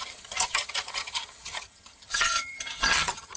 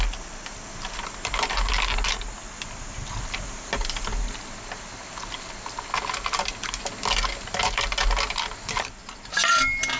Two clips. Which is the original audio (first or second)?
second